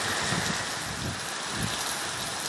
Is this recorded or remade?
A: recorded